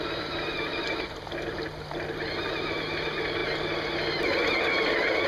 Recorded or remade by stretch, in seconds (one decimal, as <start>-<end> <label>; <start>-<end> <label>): 0.0-5.3 recorded